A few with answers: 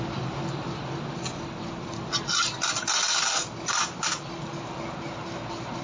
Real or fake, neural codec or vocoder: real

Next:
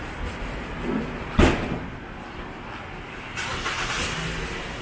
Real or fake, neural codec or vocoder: real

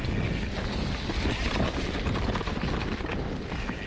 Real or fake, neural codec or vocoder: real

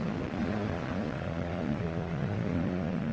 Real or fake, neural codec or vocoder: fake, vocoder, Vocos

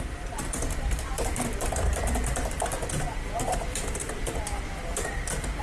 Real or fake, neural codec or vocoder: fake, vocoder, BigVGAN v2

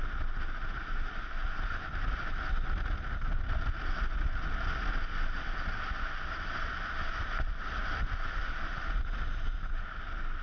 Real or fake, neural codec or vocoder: real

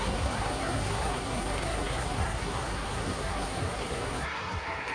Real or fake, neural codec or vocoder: fake, codec, SNAC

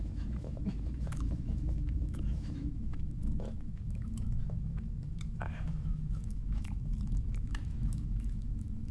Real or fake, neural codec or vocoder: fake, autoencoder, DAC-VAE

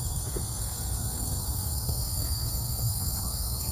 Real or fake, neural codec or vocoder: fake, codec, SNAC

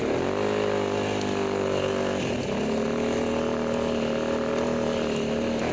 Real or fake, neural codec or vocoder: real